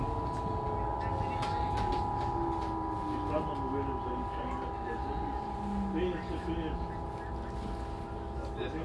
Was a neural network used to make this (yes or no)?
no